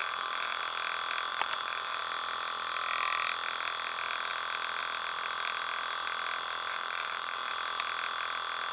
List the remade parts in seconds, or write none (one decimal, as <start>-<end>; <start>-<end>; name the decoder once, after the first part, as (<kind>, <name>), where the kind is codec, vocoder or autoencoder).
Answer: 0.0-0.6 (vocoder, BigVGAN v2); 1.3-2.0; 6.7-7.5